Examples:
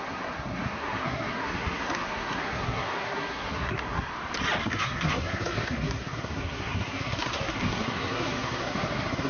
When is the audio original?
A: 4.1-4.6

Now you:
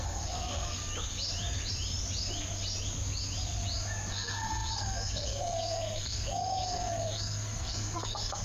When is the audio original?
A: 0.8-4.1

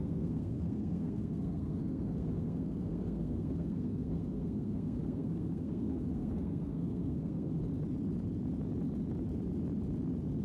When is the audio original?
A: 7.5-10.4

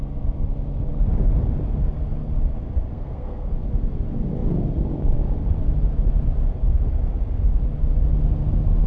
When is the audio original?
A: 0.0-2.9; 3.5-8.9

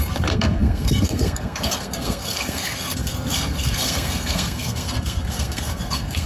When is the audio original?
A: none